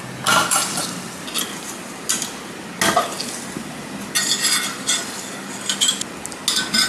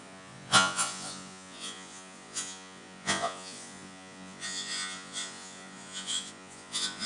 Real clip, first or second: first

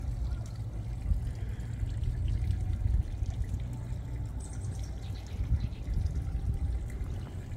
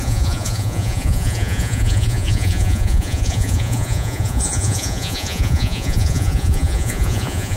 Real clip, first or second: first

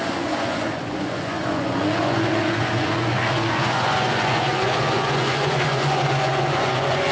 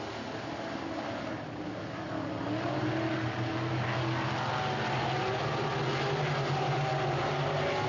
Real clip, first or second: second